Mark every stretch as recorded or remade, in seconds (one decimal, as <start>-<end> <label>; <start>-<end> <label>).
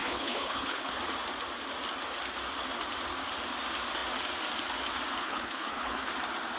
0.0-1.0 remade; 1.0-5.2 recorded; 5.2-6.1 remade; 6.1-6.6 recorded